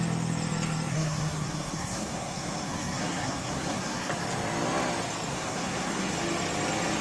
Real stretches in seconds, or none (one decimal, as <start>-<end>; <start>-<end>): 0.0-0.9; 4.1-5.3; 6.1-7.0